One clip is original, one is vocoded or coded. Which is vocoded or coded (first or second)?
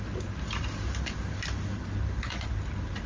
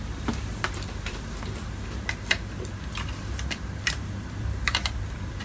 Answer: second